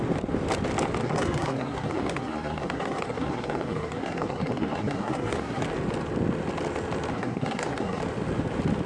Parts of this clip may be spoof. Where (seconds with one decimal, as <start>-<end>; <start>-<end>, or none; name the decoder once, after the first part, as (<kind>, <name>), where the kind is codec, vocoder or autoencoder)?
1.0-5.6 (codec, SNAC); 7.1-8.0